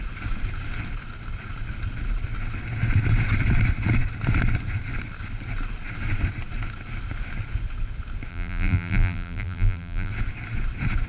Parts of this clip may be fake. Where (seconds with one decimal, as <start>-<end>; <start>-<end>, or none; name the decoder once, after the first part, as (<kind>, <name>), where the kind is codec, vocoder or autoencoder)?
8.3-10.1 (vocoder, BigVGAN v2)